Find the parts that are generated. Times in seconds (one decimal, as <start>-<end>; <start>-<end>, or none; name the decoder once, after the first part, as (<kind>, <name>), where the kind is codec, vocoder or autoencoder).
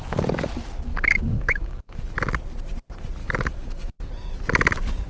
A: 0.9-2.1 (codec, DAC); 3.2-3.9